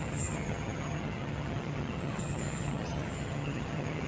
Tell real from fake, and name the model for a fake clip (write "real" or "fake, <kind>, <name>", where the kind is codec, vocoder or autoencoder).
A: fake, vocoder, HiFi-GAN